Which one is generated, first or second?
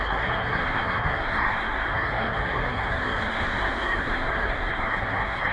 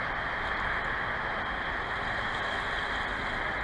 first